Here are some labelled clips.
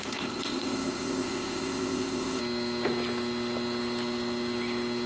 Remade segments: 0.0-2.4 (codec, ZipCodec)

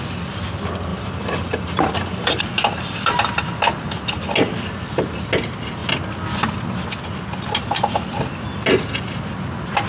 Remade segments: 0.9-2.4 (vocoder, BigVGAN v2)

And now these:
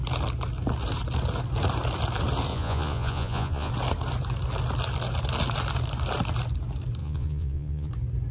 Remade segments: 2.5-3.7 (vocoder, Vocos); 7.0-7.9

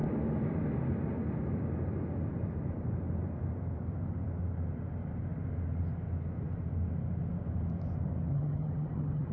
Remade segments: 8.3-9.3 (vocoder, HiFi-GAN)

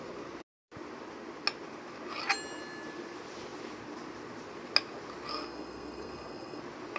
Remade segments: 5.3-6.6 (codec, SNAC)

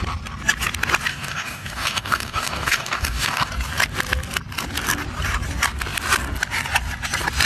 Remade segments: 1.1-3.5 (codec, DAC)